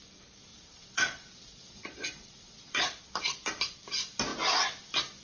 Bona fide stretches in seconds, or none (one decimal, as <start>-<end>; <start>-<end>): 0.0-0.5; 3.0-5.2